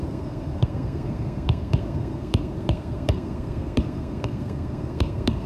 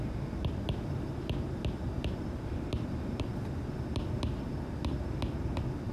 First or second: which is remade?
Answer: first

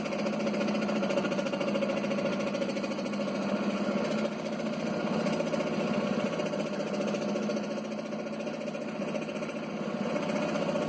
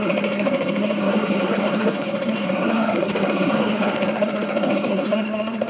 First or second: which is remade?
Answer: second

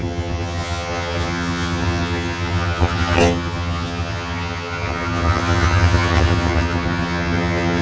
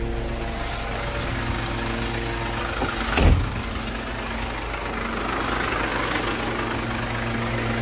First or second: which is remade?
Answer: first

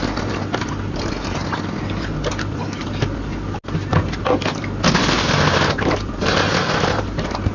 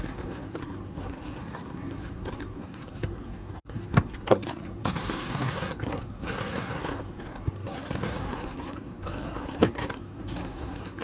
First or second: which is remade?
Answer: second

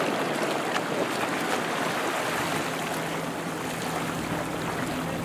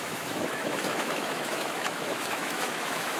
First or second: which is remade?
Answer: second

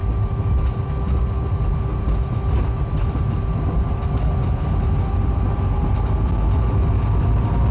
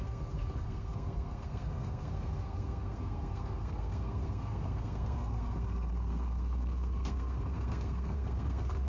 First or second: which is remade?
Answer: second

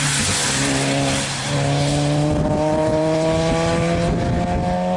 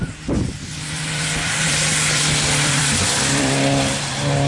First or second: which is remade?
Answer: second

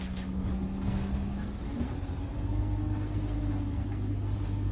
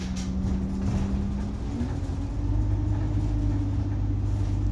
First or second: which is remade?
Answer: first